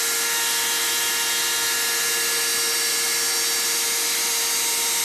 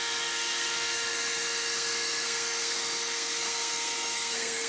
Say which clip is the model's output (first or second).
second